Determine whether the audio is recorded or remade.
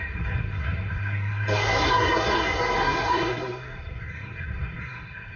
remade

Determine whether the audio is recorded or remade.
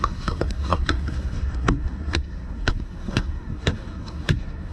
remade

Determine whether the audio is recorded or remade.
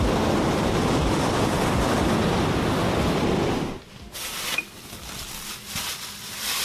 recorded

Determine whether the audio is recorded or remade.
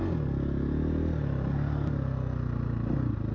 recorded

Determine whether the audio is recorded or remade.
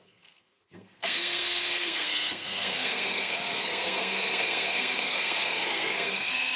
remade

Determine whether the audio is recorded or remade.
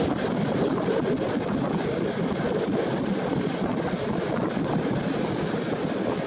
recorded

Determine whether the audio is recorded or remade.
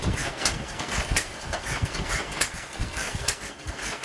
remade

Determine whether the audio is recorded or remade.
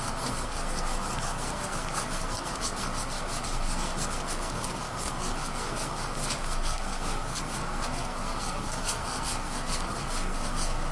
remade